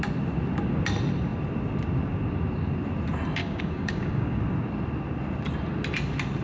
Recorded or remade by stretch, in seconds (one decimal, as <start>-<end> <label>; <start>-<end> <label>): 0.0-3.4 recorded; 3.4-4.4 remade; 4.4-6.4 recorded